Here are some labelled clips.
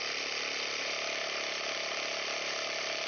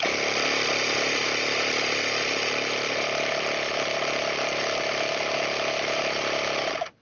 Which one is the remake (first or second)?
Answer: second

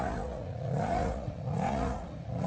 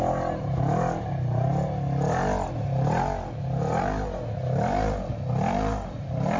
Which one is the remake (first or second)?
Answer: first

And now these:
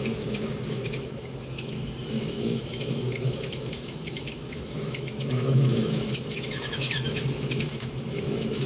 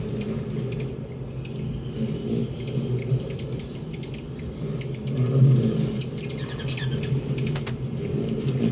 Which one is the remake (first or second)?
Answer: first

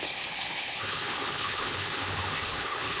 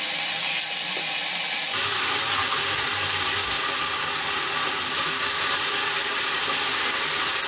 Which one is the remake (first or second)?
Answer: first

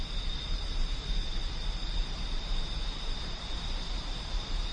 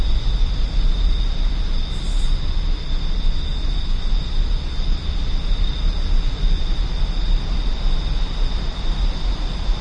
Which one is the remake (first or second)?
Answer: first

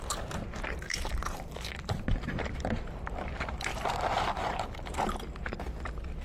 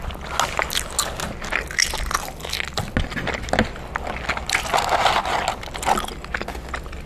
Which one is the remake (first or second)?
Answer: first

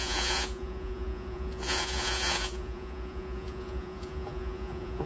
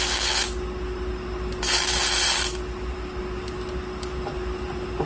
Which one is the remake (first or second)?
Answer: first